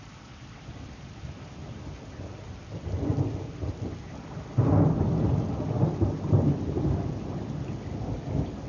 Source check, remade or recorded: recorded